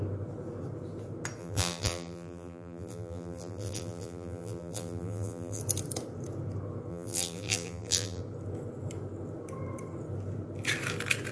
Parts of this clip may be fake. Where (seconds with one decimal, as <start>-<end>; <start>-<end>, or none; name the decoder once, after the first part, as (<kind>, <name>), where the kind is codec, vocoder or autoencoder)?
1.4-5.6 (vocoder, BigVGAN v2); 6.9-8.2